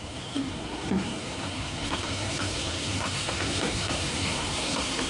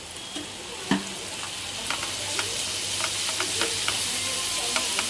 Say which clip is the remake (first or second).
first